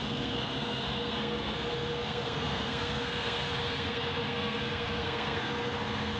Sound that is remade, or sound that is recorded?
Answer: remade